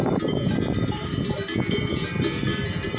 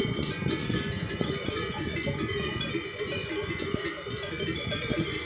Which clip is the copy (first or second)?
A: second